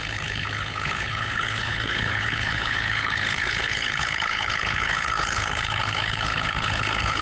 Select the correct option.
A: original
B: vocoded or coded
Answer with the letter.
B